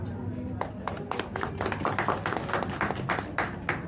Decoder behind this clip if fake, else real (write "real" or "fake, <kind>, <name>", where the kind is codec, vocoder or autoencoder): real